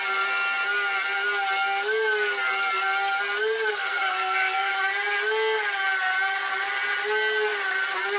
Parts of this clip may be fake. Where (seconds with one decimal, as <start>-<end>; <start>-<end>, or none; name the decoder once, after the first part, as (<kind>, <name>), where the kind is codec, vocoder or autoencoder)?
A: 3.7-4.7 (codec, SNAC)